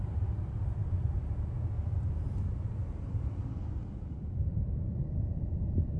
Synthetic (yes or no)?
yes